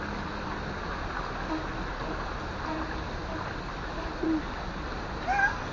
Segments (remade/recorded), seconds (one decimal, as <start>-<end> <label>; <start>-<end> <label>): 0.0-5.7 recorded